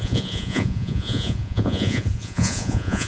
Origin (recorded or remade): remade